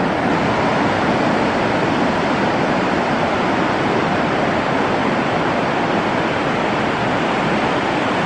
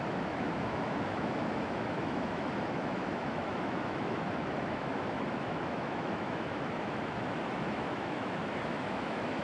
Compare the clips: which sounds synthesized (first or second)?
second